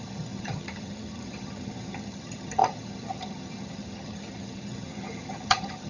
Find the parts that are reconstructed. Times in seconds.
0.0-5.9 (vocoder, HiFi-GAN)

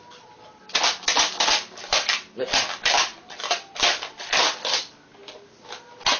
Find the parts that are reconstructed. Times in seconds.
none

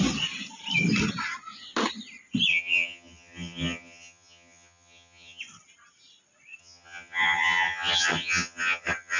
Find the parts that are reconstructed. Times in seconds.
2.5-5.4 (vocoder, HiFi-GAN); 6.6-9.2

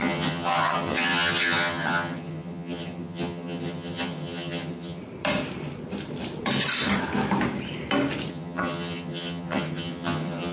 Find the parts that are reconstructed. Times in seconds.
0.0-5.0 (vocoder, HiFi-GAN); 8.3-10.5